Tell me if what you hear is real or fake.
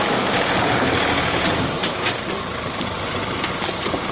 fake